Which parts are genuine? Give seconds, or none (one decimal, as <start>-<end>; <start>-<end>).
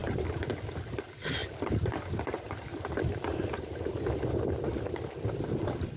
0.5-2.7; 5.4-6.0